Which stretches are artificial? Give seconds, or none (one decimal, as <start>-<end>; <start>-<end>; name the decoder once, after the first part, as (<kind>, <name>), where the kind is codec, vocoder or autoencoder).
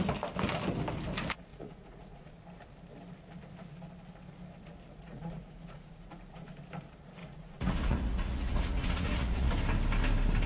1.5-2.4 (vocoder, Vocos); 4.9-6.6; 7.2-9.5